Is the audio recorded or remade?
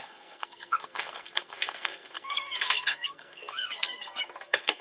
remade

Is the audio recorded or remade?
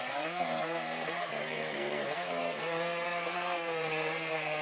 remade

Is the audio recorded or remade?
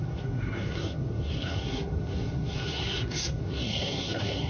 remade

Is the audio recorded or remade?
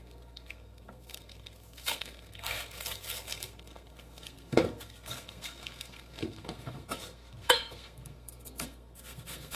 remade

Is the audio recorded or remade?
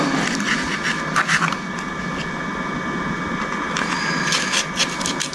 recorded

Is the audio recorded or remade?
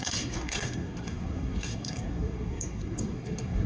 remade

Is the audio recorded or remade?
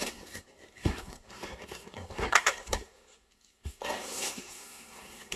remade